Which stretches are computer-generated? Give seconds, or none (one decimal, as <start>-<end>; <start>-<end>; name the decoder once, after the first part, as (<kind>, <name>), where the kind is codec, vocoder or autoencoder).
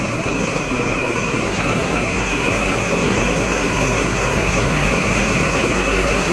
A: 0.0-6.3 (codec, SNAC)